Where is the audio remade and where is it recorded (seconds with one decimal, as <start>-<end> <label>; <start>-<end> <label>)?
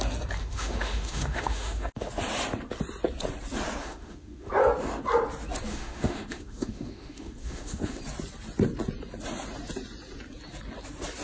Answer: 0.0-0.4 recorded; 0.4-2.1 remade; 2.1-3.8 recorded; 3.8-4.5 remade; 4.5-5.7 recorded; 5.7-8.0 remade; 8.0-11.2 recorded